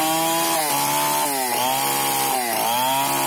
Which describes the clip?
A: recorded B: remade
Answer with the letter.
A